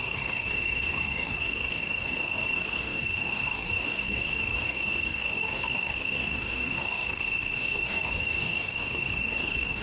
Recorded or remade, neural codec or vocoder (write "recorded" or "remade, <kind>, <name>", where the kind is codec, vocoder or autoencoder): remade, codec, DAC